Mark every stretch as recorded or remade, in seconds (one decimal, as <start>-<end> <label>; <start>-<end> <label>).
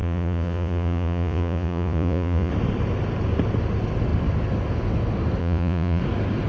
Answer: 0.0-2.5 remade; 2.5-5.4 recorded; 5.4-6.0 remade; 6.0-6.5 recorded